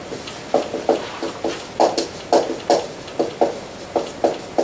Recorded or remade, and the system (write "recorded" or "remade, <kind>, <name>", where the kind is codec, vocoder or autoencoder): recorded